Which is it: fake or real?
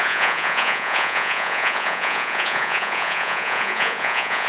fake